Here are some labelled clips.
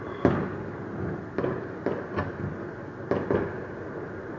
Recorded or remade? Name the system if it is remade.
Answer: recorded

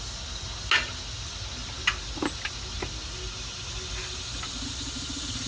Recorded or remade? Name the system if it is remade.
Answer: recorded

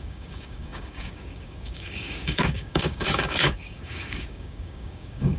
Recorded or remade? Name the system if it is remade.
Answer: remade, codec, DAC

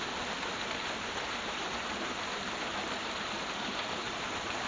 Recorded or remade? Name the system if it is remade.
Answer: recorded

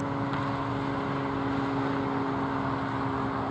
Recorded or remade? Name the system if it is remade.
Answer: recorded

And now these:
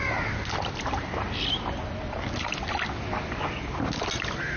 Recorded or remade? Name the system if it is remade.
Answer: recorded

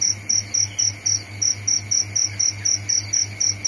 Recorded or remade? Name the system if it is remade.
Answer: recorded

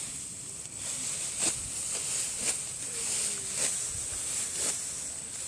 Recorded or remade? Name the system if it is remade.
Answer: recorded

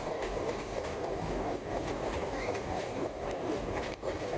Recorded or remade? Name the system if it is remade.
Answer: remade, codec, DAC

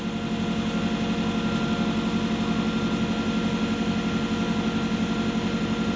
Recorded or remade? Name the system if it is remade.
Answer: recorded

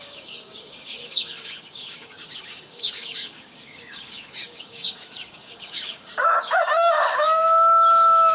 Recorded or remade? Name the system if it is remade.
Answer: remade, codec, DAC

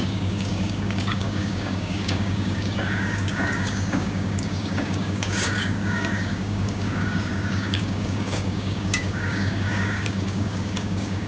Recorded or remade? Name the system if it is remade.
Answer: remade, codec, DAC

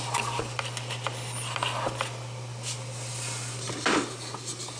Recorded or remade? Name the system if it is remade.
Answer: recorded